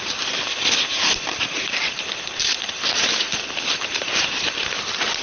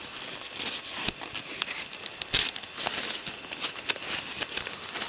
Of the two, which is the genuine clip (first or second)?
second